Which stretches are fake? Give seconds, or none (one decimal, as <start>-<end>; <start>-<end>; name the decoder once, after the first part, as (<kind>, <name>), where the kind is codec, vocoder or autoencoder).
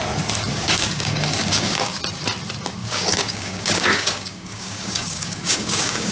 0.5-2.0 (codec, DAC); 2.8-6.1